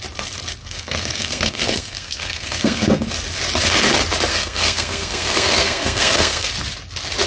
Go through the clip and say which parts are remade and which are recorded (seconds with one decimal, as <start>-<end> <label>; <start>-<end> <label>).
0.0-0.6 recorded; 0.6-3.1 remade; 3.1-4.3 recorded; 4.3-6.5 remade; 6.5-7.3 recorded